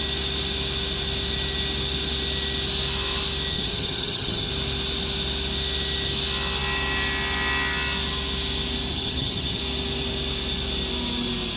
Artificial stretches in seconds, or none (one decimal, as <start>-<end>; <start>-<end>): 3.5-4.5; 8.9-9.6